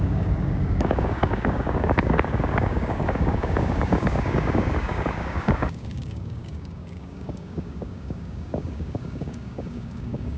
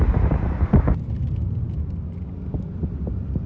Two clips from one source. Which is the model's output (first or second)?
first